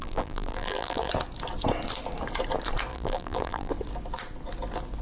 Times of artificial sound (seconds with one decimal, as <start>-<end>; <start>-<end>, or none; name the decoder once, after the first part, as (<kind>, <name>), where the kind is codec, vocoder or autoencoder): 0.0-1.1 (vocoder, BigVGAN v2); 2.9-3.7